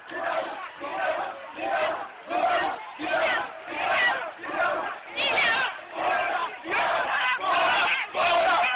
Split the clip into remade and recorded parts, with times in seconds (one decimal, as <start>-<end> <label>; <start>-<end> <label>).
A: 0.0-8.8 recorded